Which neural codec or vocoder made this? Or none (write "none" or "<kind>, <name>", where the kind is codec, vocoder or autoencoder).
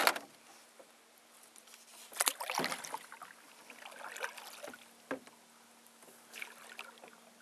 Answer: none